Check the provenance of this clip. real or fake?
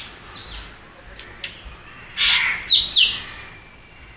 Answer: real